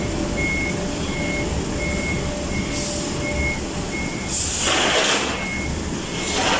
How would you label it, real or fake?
real